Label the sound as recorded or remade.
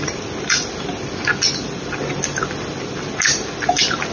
recorded